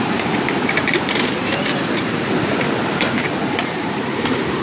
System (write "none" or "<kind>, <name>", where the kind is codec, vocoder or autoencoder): vocoder, BigVGAN v2